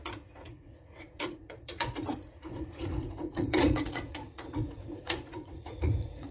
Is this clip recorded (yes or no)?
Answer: no